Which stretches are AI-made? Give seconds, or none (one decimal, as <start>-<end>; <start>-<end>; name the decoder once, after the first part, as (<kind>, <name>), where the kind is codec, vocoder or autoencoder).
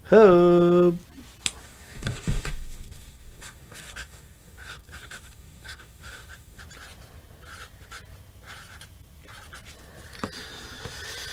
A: 1.6-6.6 (codec, DAC)